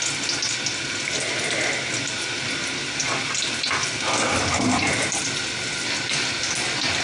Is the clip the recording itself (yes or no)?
yes